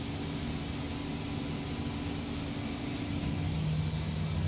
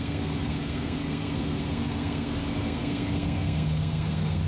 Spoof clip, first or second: second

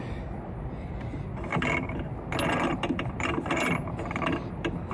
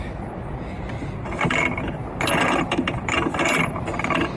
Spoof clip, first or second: second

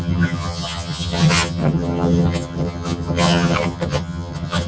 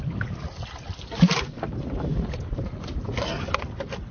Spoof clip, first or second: first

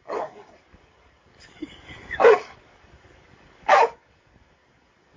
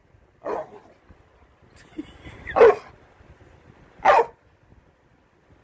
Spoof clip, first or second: first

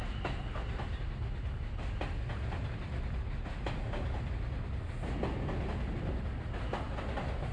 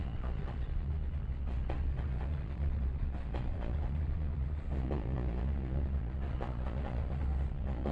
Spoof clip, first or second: second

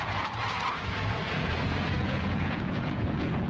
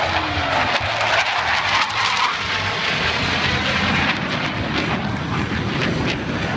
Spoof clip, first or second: first